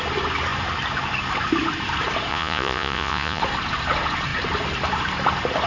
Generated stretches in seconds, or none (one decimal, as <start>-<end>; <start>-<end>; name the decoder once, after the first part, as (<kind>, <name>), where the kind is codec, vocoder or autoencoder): 2.3-3.4 (vocoder, Vocos)